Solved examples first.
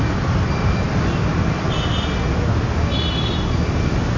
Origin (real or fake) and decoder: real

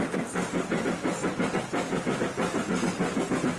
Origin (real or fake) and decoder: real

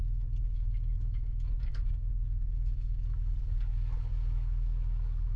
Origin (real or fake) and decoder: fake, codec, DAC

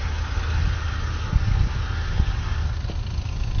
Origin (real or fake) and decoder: real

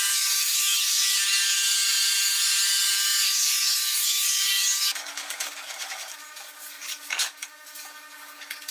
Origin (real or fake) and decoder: fake, codec, DAC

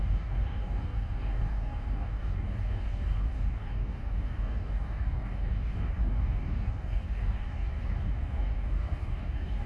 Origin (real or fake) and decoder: fake, codec, DAC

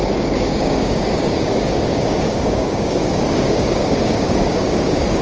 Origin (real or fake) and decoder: fake, codec, DAC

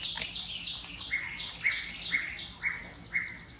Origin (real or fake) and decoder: real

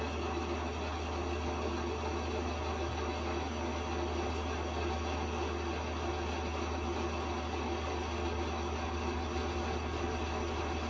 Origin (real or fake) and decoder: real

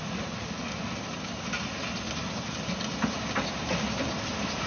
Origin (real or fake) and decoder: real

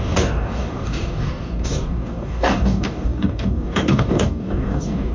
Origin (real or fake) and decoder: fake, codec, DAC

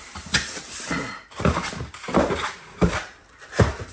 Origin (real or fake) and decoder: real